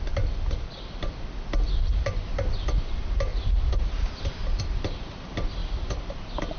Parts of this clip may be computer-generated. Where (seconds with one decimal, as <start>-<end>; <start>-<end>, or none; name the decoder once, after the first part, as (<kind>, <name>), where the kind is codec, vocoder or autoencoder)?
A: 3.3-4.6 (vocoder, BigVGAN v2)